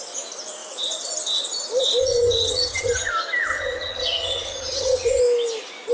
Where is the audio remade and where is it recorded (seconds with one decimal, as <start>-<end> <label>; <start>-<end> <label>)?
0.0-2.0 recorded; 2.0-3.1 remade; 3.1-3.5 recorded; 3.5-5.2 remade; 5.2-5.9 recorded